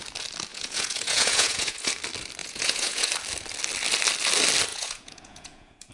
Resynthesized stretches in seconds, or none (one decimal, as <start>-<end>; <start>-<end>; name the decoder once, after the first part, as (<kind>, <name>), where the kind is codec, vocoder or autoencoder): 0.5-1.9 (vocoder, Vocos); 2.4-3.1; 4.7-5.9